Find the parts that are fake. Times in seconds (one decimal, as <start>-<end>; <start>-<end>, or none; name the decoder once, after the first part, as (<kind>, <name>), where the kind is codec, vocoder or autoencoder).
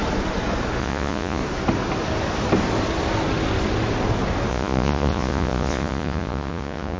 0.8-1.4 (vocoder, Vocos); 4.5-7.0